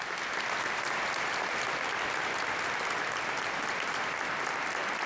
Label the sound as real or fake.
real